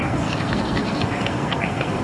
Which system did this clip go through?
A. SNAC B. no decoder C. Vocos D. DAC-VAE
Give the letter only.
A